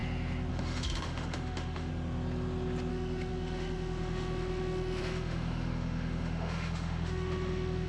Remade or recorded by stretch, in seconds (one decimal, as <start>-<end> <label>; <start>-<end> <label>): 0.0-0.5 recorded; 0.5-1.9 remade; 1.9-2.9 recorded; 2.9-7.9 remade